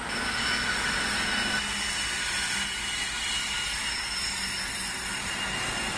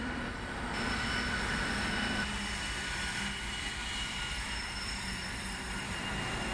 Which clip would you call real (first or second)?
first